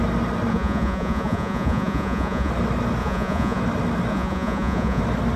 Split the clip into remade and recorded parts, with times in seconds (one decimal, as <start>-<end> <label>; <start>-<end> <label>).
0.0-0.5 recorded; 0.5-2.5 remade; 2.5-3.0 recorded; 3.0-3.6 remade; 3.6-4.1 recorded; 4.1-5.0 remade; 5.0-5.4 recorded